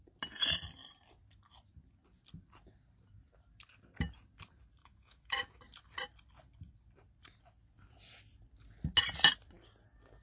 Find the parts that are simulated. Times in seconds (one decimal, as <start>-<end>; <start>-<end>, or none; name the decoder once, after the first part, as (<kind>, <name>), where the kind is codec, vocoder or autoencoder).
4.8-5.6 (autoencoder, DAC-VAE)